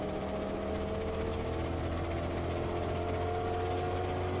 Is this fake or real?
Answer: real